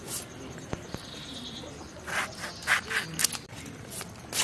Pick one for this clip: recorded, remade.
recorded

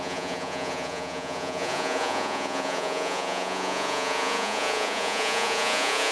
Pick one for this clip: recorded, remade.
remade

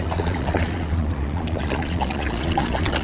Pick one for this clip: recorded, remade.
remade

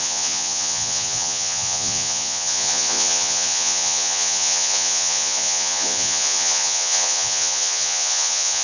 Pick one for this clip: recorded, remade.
remade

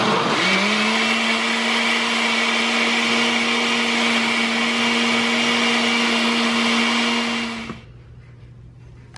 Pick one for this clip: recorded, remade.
recorded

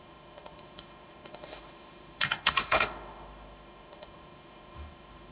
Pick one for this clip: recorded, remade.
remade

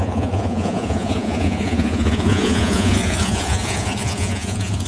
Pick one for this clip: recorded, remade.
remade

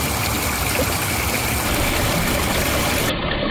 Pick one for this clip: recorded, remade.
recorded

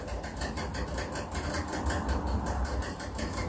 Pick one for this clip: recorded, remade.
recorded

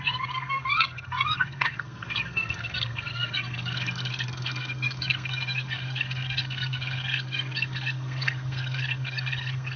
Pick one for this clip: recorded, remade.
remade